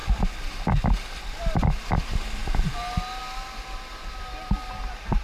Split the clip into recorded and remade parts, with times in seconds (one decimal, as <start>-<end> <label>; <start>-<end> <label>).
0.0-5.2 recorded

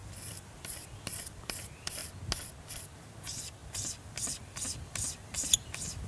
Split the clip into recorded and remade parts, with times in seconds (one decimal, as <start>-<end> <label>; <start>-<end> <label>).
0.0-2.0 remade; 2.0-2.7 recorded; 2.7-6.1 remade

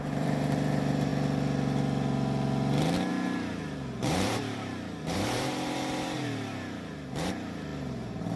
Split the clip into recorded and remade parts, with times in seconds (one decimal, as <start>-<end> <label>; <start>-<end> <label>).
0.0-1.1 remade; 1.1-3.1 recorded; 3.1-8.4 remade

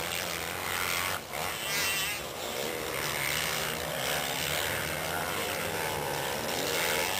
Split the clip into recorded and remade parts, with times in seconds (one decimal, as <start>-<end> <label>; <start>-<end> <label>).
0.0-7.2 recorded

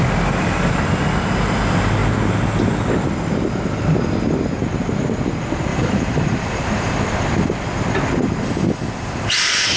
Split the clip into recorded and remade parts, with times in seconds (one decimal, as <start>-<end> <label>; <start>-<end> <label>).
0.0-5.7 recorded; 5.7-6.9 remade; 6.9-9.8 recorded

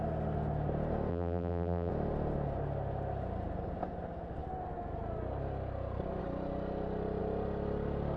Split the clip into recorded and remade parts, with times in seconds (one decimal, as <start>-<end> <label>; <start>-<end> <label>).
0.0-1.1 recorded; 1.1-1.9 remade; 1.9-8.2 recorded